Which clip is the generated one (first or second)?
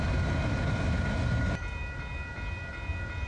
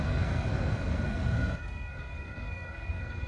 second